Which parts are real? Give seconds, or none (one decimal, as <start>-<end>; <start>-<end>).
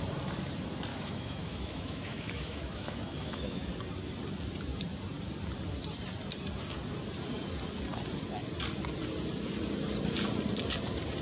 0.0-0.9; 3.7-11.2